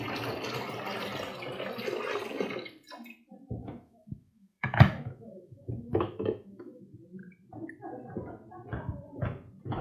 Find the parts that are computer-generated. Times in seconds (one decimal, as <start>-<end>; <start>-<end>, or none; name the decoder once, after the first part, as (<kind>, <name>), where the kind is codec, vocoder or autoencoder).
3.6-6.8 (autoencoder, DAC-VAE)